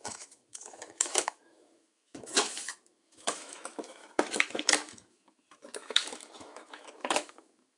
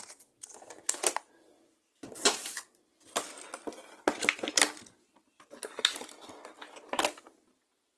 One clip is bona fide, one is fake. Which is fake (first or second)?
first